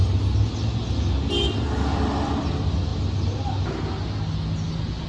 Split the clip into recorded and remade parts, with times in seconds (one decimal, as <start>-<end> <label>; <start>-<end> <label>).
0.0-5.1 recorded